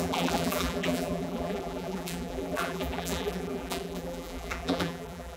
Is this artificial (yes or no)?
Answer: yes